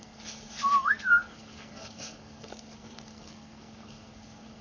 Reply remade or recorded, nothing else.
remade